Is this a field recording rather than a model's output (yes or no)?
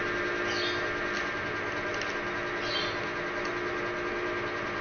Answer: yes